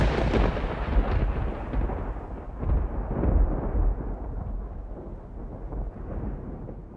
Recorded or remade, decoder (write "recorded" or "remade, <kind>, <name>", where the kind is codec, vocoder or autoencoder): recorded